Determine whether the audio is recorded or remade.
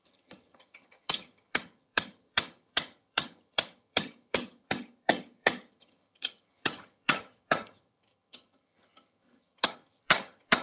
remade